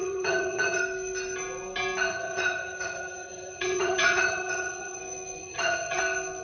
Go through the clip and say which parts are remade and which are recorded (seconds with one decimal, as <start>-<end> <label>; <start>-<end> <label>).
0.0-0.8 remade; 0.8-2.1 recorded; 2.1-5.0 remade; 5.0-5.4 recorded; 5.4-6.0 remade; 6.0-6.4 recorded